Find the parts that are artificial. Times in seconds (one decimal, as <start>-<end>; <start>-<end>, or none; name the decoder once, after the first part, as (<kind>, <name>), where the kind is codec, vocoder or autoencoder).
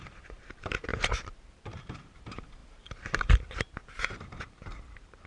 0.0-5.3 (vocoder, BigVGAN v2)